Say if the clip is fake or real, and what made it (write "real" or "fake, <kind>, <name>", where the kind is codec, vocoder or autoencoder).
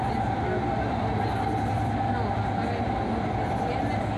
real